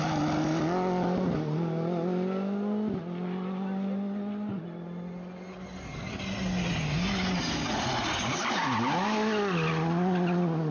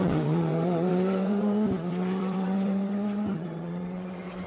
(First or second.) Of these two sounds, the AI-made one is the second